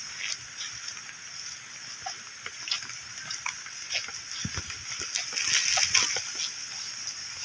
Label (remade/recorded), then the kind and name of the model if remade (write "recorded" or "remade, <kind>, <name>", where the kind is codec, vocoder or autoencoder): recorded